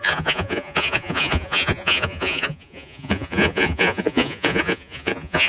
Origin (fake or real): fake